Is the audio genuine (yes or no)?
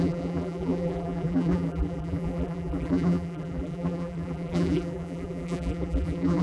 no